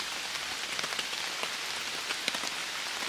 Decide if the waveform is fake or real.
real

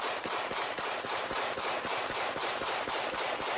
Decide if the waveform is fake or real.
fake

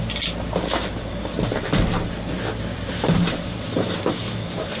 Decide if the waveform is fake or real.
fake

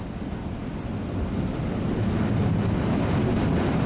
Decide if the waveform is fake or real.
real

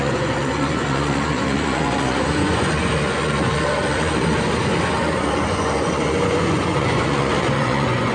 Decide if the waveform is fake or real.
fake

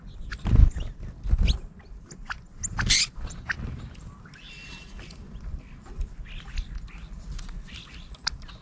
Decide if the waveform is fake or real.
real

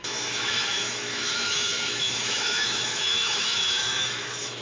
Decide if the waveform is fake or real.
fake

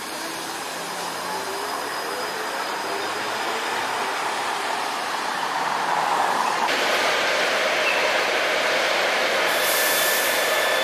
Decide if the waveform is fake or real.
fake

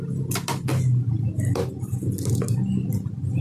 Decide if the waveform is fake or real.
real